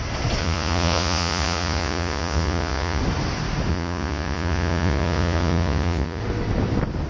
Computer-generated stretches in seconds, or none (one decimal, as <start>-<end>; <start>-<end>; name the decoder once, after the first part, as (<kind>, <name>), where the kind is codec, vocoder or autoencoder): 0.4-3.0 (vocoder, Vocos); 3.7-6.2